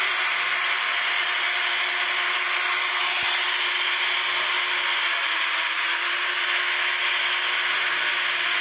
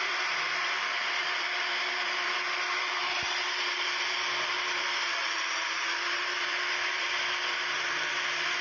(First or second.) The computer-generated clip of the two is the second